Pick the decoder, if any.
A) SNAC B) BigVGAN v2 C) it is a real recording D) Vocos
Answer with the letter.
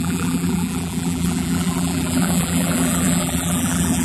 B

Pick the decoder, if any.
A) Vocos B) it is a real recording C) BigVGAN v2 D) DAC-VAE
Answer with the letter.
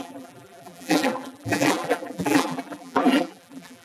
C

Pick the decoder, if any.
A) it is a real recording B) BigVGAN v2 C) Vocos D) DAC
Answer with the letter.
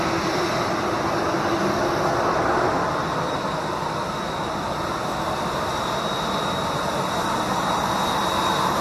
B